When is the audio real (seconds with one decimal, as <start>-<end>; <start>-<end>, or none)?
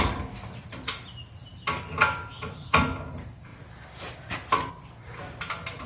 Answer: 0.0-5.9